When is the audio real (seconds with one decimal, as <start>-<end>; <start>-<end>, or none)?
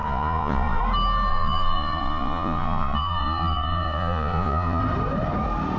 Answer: 0.8-1.3; 4.8-5.8